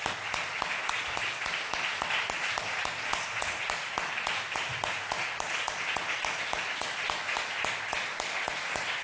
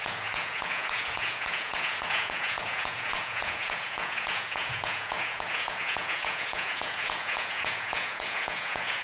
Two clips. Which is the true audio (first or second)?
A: first